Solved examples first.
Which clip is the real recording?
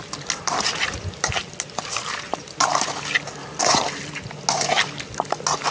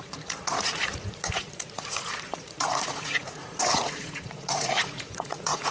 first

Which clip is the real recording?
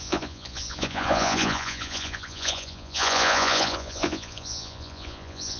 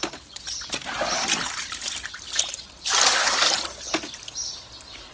second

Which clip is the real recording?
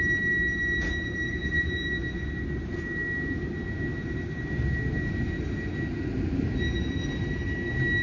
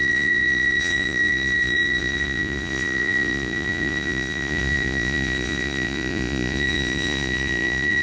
first